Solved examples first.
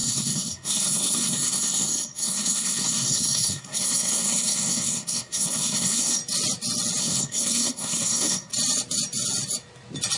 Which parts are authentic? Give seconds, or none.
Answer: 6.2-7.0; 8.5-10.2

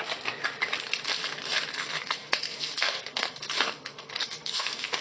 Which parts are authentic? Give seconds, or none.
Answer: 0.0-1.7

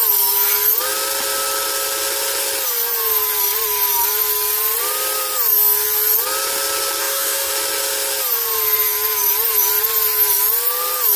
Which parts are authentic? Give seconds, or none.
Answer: 0.0-7.0; 7.5-11.2